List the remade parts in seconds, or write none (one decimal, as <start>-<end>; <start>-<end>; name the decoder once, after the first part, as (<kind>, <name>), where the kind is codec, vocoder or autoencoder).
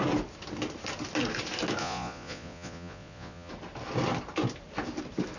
1.8-3.5 (vocoder, Vocos)